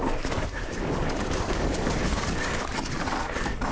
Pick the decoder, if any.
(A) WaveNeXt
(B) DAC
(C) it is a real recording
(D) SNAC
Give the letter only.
B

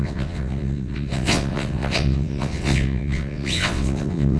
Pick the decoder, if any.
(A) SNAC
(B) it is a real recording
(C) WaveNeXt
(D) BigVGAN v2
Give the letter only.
C